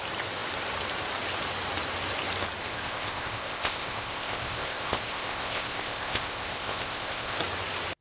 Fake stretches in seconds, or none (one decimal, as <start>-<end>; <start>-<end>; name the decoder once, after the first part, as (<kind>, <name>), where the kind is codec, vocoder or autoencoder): 2.6-7.4 (codec, ZipCodec)